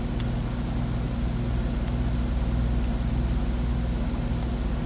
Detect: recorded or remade recorded